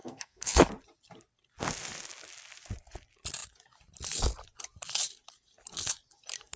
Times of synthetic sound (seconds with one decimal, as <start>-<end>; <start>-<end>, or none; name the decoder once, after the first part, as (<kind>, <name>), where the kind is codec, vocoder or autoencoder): 0.0-0.7 (codec, SNAC)